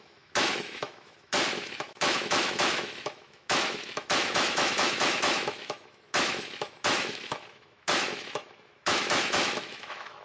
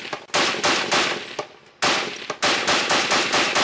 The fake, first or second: first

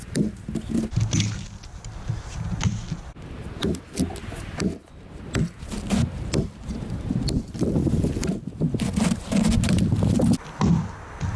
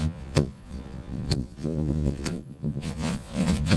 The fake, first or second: second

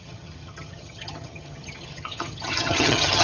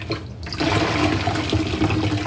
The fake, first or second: first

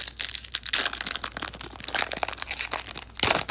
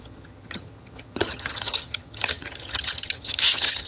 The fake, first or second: second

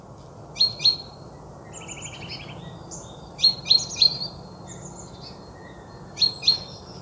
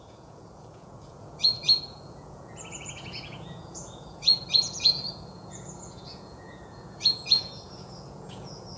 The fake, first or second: second